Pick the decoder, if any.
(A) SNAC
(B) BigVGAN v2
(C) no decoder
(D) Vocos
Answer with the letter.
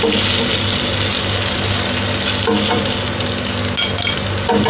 C